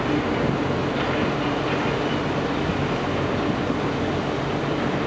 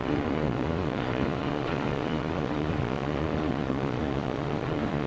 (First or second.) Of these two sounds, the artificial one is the second